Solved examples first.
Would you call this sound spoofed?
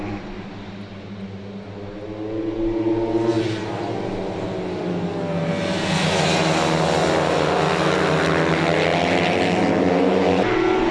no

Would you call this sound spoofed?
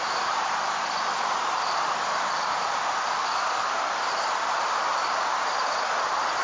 no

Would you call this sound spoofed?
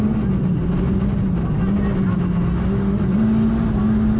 no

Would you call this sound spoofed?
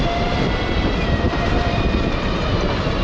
no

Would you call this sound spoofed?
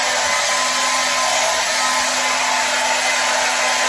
no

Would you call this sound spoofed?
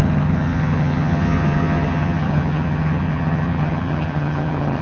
yes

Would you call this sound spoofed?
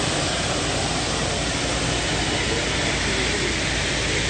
no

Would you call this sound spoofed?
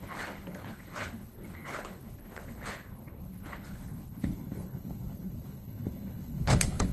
yes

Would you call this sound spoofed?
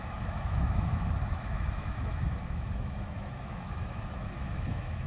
yes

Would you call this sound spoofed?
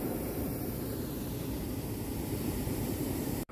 yes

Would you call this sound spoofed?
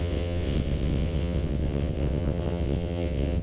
yes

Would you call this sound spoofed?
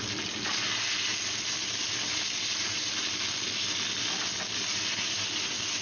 no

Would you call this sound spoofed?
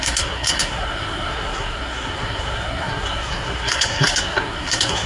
yes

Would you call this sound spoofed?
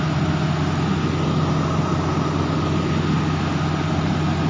no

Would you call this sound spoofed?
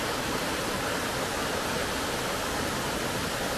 no